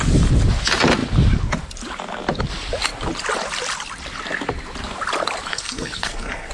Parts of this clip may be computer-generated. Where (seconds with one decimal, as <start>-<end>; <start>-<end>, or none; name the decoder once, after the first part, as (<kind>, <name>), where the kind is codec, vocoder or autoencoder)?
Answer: 5.5-6.5 (codec, SNAC)